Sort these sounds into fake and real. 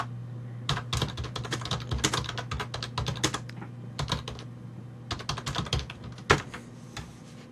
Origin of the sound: real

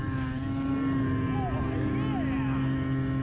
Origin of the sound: real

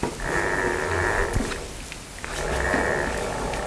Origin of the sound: real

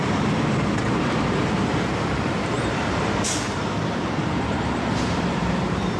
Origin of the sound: fake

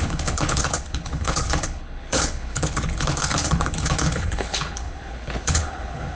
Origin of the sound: fake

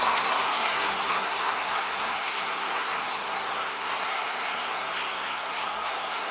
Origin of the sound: fake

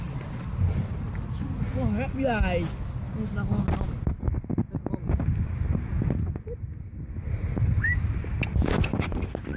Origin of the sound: real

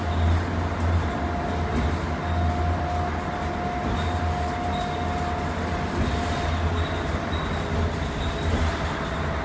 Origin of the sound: real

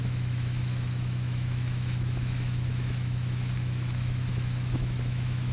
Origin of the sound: fake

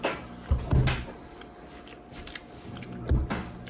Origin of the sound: real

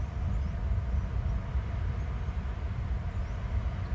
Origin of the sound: real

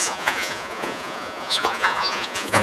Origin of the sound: fake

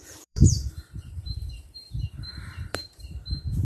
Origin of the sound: fake